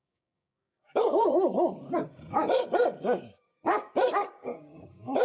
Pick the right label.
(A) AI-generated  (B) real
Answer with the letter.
A